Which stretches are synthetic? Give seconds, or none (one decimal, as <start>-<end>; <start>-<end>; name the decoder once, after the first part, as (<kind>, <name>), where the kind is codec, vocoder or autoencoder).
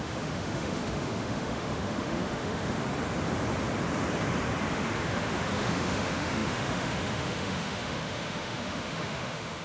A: 0.0-2.8 (autoencoder, DAC-VAE); 4.7-9.6